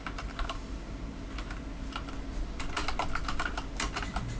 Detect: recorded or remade recorded